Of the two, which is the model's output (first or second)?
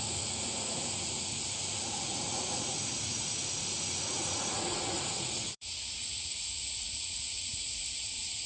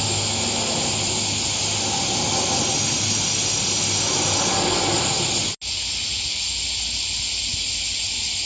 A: first